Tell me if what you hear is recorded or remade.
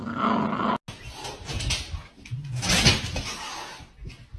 recorded